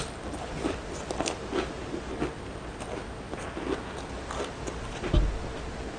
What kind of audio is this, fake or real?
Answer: real